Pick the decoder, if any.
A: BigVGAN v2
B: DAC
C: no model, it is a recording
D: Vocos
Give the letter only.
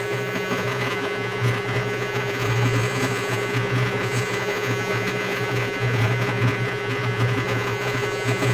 D